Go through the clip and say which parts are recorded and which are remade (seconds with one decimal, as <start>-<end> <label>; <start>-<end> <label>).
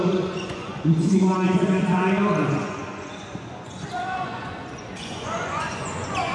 0.0-1.9 remade; 1.9-2.5 recorded; 2.5-6.3 remade